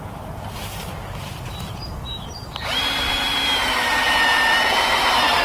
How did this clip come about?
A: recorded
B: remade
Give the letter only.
B